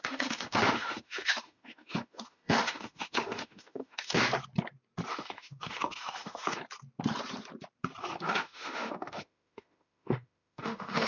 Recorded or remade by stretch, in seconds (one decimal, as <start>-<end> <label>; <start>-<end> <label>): 0.0-4.2 remade; 4.2-5.1 recorded; 5.1-6.6 remade; 6.6-8.0 recorded; 8.0-11.1 remade